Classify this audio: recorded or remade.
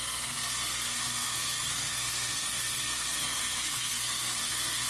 remade